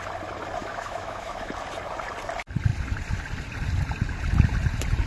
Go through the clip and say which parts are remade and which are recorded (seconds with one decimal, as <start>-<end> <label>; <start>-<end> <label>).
0.0-0.6 recorded; 0.6-1.5 remade; 1.5-5.1 recorded